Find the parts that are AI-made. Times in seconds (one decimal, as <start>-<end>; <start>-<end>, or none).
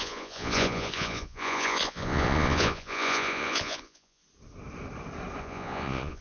0.0-4.2; 5.4-6.2